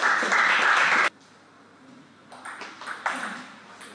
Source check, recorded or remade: recorded